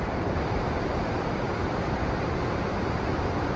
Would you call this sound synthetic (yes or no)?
no